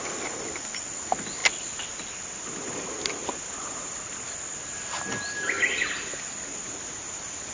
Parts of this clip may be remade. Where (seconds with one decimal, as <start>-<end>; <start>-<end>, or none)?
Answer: none